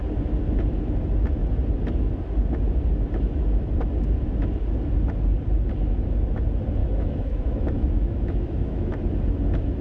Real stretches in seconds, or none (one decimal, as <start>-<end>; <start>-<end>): 0.0-6.8; 8.9-9.8